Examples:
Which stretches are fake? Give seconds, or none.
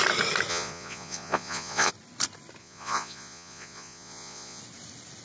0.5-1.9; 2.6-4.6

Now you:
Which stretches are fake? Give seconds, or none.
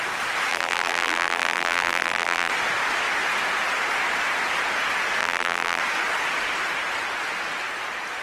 0.5-2.5; 5.2-5.8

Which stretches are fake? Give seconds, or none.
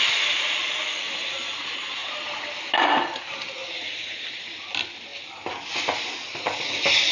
none